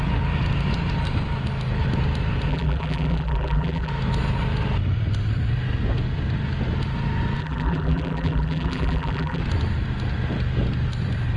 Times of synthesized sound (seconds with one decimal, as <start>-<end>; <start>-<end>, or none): 2.5-3.9; 7.4-9.4